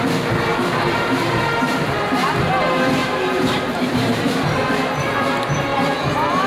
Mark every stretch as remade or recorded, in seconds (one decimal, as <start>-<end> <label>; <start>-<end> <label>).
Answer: 0.0-0.5 recorded; 0.5-2.0 remade; 2.0-3.0 recorded; 3.0-4.7 remade; 4.7-6.5 recorded